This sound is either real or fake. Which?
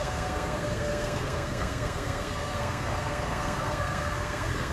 fake